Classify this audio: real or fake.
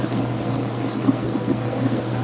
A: fake